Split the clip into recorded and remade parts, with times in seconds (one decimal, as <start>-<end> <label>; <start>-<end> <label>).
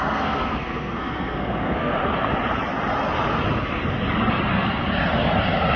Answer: 0.0-1.9 remade; 1.9-5.8 recorded